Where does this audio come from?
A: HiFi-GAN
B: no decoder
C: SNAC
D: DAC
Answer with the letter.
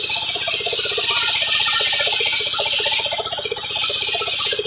B